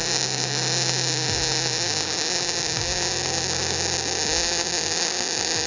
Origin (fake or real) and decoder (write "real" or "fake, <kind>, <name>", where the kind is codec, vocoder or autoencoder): real